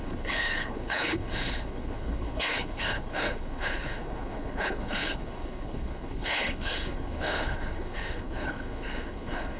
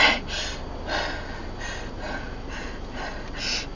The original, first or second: second